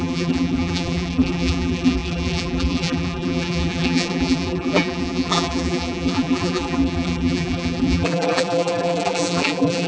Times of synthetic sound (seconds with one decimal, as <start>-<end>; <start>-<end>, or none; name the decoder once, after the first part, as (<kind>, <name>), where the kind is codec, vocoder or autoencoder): 0.0-9.9 (vocoder, BigVGAN v2)